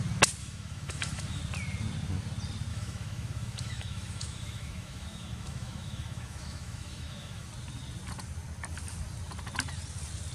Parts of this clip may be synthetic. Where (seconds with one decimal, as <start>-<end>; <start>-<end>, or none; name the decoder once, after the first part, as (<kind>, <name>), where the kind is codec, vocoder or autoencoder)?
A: 0.4-1.4 (autoencoder, DAC-VAE); 2.7-7.5